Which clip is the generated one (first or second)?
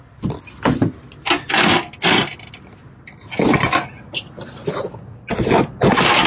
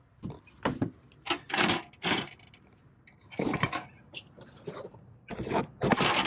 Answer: second